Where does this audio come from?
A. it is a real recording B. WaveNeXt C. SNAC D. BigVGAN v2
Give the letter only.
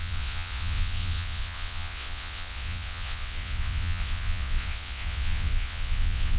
B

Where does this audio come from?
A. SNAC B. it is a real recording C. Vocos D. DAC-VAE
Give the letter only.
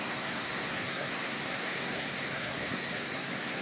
A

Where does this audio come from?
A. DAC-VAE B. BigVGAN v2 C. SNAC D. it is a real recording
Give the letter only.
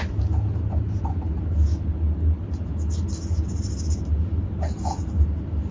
D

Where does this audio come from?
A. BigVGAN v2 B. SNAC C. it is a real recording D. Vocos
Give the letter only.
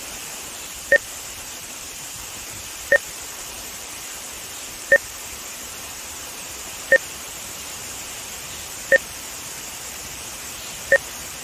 A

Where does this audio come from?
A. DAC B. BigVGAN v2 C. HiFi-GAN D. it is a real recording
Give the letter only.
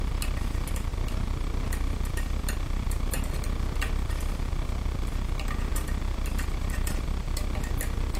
D